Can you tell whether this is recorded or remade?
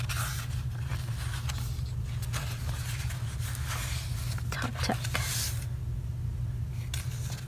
recorded